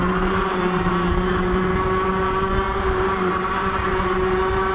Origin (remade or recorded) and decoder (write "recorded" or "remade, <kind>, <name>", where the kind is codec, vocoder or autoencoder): remade, vocoder, BigVGAN v2